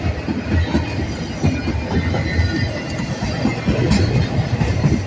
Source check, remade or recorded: recorded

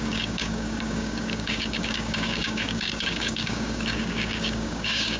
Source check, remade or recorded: remade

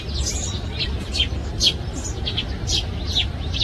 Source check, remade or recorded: recorded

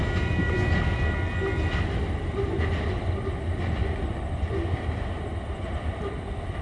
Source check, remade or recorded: recorded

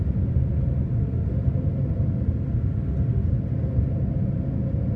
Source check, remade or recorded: recorded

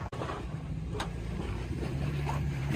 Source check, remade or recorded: remade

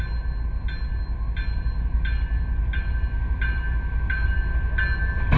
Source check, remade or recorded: recorded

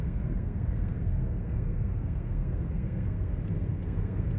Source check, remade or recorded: remade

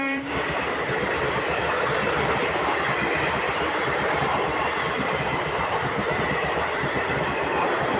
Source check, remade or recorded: remade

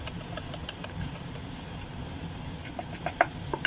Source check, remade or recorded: recorded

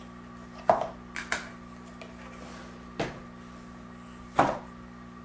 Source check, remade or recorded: recorded